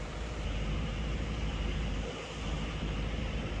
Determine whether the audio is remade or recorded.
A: remade